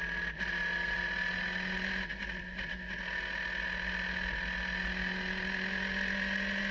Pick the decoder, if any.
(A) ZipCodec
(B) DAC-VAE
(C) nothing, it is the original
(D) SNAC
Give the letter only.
C